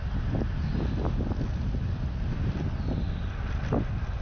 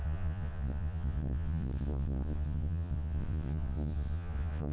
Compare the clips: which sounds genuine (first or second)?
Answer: first